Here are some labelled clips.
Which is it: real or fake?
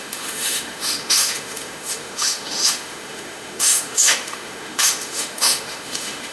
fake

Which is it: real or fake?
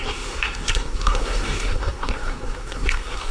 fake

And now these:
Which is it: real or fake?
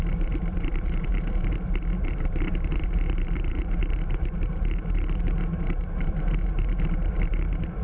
fake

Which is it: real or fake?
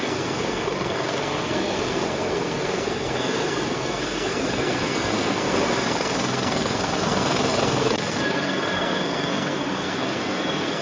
fake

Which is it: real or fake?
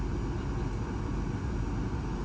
real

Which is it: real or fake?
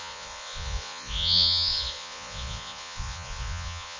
fake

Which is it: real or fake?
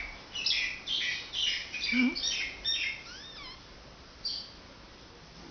real